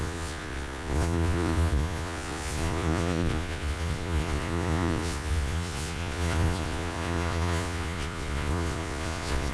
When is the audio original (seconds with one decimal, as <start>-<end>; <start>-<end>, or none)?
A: none